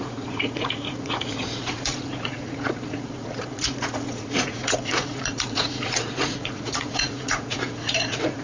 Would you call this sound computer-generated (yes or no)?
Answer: yes